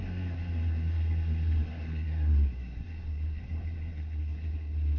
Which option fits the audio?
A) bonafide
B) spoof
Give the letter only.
B